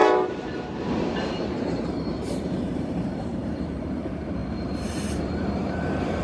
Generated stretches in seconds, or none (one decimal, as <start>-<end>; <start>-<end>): 0.0-4.4